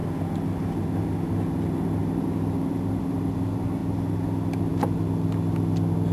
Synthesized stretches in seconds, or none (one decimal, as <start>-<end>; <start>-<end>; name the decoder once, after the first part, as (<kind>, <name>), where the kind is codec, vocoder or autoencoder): 2.0-2.9 (vocoder, BigVGAN v2); 3.8-4.7